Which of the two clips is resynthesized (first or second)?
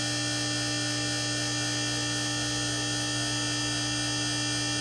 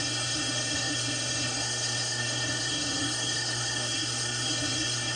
second